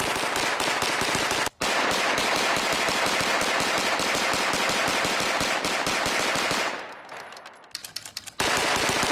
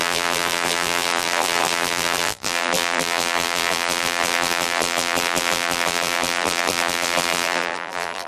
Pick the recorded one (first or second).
first